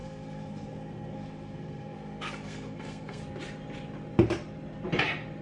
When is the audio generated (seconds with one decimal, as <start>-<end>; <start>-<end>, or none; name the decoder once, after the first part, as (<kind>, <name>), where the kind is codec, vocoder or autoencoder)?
0.0-3.2 (codec, SNAC)